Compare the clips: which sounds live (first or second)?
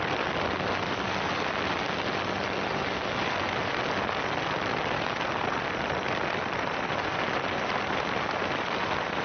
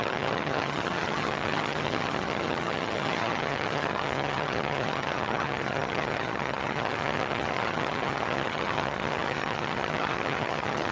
first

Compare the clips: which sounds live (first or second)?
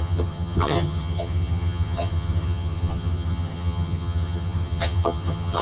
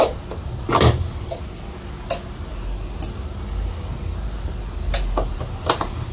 second